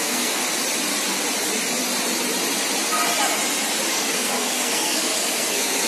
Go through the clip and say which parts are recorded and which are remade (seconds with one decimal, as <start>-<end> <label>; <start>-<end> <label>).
0.0-0.4 remade; 0.4-3.9 recorded; 3.9-5.9 remade